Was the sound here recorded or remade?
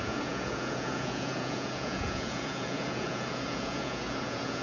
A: remade